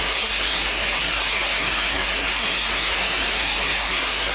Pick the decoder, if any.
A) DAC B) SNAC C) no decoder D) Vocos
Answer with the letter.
B